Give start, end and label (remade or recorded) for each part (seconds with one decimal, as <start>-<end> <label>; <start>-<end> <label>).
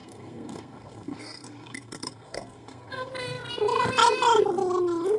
0.0-3.1 remade; 3.1-5.2 recorded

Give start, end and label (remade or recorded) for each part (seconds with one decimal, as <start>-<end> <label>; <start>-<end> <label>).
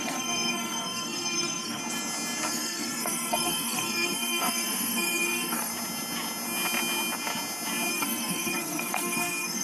0.0-1.8 remade; 1.8-2.5 recorded; 2.5-5.7 remade; 5.7-7.9 recorded; 7.9-9.6 remade